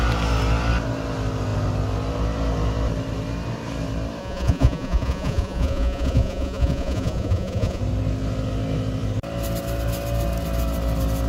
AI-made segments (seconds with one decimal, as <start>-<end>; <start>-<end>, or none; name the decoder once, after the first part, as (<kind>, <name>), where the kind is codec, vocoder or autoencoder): 4.2-7.8 (vocoder, Vocos)